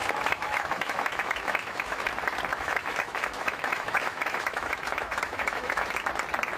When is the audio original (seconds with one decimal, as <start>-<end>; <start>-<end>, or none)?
2.1-2.5; 6.1-6.6